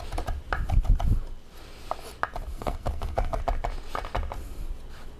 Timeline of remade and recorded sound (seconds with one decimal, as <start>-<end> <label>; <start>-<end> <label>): 0.0-2.5 recorded; 2.5-3.4 remade; 3.4-5.2 recorded